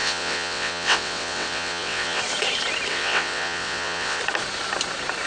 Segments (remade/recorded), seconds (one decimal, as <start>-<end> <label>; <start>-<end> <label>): 0.0-2.2 remade; 2.2-2.9 recorded; 2.9-4.2 remade; 4.2-5.3 recorded